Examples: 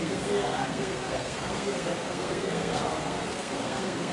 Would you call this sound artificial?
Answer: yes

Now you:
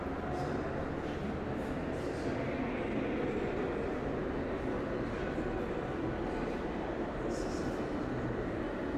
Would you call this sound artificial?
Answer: no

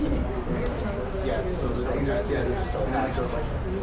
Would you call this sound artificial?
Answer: no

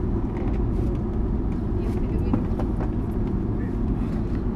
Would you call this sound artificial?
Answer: no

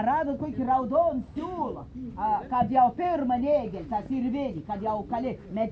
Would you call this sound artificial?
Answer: no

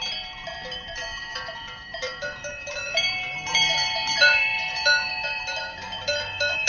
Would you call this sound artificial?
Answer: yes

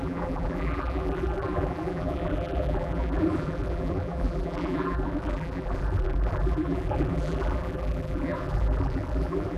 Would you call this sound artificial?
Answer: yes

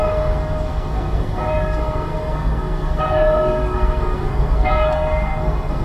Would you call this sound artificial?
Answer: yes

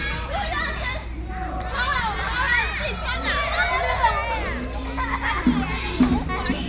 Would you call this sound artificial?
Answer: no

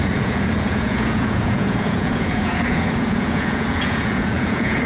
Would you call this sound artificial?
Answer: yes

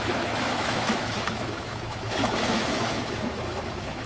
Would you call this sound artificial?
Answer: yes